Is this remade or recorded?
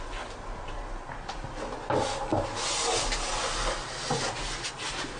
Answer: recorded